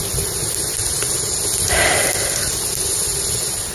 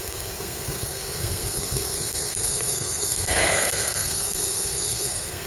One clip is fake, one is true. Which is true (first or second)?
first